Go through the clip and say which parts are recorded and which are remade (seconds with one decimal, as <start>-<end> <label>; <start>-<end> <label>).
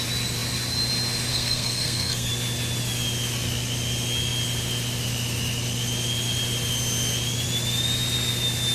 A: 0.0-1.3 recorded; 1.3-2.3 remade; 2.3-8.7 recorded